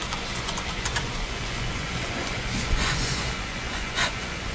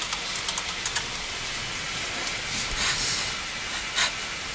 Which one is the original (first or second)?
second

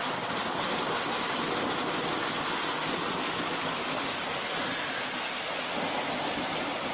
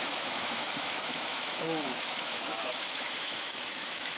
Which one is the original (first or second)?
first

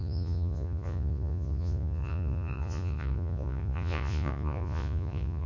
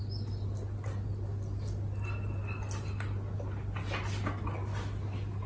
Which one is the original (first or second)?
second